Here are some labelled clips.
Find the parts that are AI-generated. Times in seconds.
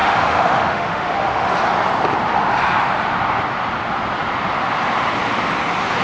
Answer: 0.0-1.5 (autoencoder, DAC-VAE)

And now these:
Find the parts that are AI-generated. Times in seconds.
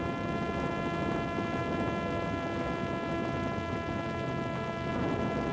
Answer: none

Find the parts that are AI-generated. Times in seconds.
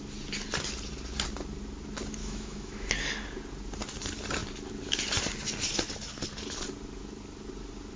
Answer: 2.2-2.9 (autoencoder, DAC-VAE)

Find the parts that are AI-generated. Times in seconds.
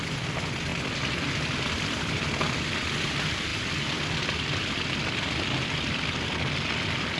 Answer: none